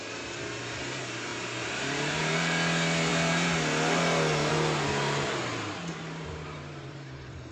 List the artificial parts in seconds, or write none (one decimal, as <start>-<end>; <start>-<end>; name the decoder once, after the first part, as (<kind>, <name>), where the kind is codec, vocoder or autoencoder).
1.3-2.4 (vocoder, BigVGAN v2); 5.5-7.5